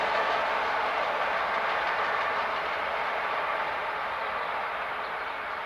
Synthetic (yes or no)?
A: no